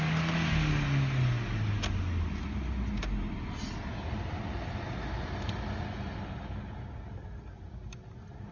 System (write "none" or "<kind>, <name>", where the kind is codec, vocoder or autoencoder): none